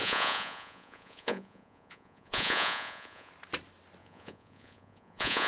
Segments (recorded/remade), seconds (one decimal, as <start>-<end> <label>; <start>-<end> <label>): 0.0-3.3 remade; 3.3-4.0 recorded; 4.0-5.5 remade